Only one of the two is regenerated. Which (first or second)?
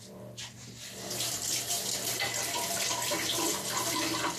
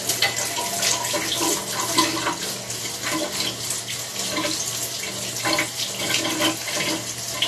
first